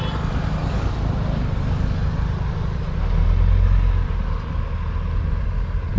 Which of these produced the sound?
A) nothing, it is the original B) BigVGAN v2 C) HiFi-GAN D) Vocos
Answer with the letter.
A